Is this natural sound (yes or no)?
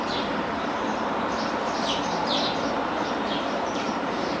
no